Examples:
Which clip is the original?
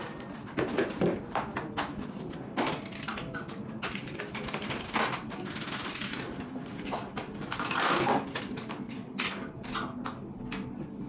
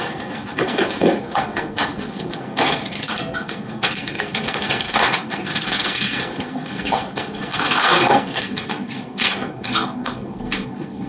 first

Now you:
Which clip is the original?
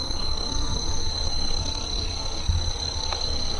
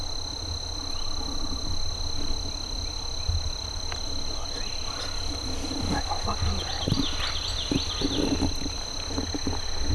second